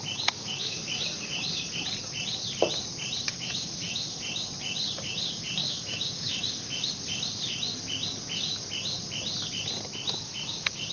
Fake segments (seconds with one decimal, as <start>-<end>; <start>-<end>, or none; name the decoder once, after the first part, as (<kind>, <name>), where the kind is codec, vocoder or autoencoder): 0.4-1.0 (autoencoder, DAC-VAE); 3.3-4.2; 5.6-6.9